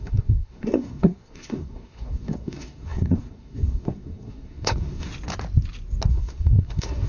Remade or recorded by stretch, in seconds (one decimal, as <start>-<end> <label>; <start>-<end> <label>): 0.0-5.1 remade; 5.1-6.1 recorded; 6.1-7.1 remade